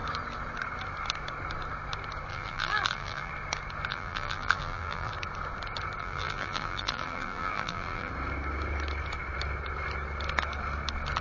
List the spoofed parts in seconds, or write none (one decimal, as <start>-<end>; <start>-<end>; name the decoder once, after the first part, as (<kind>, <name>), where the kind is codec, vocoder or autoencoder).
2.3-3.3 (vocoder, BigVGAN v2); 3.9-5.1; 6.0-8.1